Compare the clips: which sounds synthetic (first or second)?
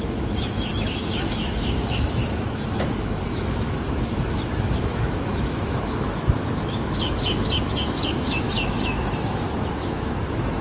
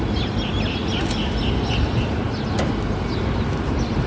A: first